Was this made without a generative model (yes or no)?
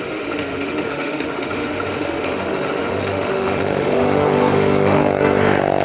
no